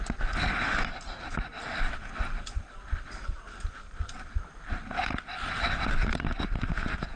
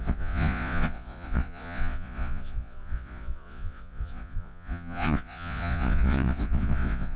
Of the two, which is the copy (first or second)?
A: second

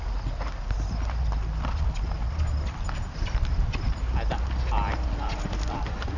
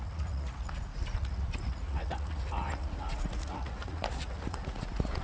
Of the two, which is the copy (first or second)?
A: second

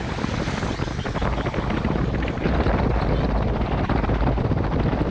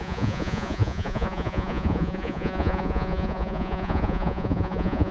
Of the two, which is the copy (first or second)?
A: second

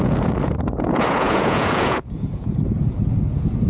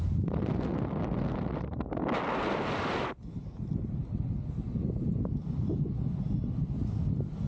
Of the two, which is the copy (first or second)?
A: first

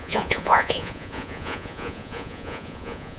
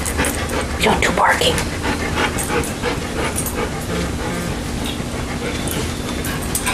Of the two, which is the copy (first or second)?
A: first